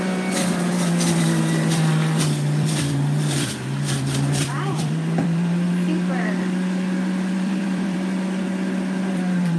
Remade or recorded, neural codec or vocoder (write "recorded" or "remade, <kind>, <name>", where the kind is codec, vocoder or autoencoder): remade, vocoder, BigVGAN v2